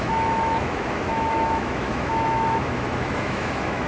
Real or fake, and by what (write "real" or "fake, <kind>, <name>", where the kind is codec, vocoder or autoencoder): fake, autoencoder, DAC-VAE